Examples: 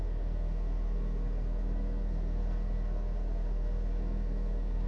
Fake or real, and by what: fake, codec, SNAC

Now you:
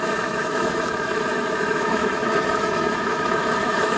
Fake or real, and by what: fake, autoencoder, DAC-VAE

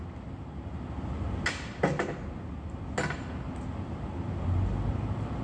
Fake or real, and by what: real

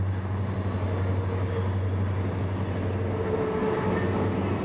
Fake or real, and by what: real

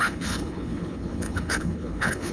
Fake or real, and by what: fake, codec, HILCodec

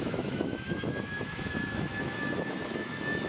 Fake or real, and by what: fake, autoencoder, DAC-VAE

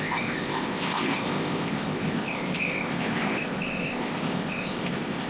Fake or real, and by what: fake, codec, ZipCodec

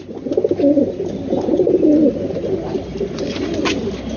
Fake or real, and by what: real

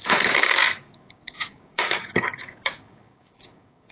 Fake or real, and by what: fake, codec, DAC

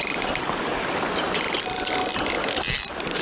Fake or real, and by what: real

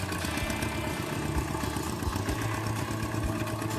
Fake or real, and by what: real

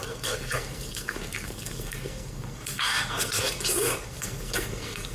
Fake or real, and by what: fake, codec, SNAC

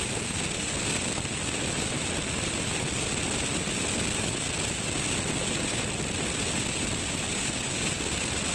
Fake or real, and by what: real